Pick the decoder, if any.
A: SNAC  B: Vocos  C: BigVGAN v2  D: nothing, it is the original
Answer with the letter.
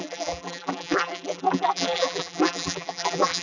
C